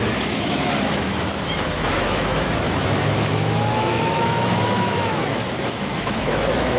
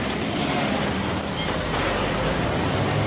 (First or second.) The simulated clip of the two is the first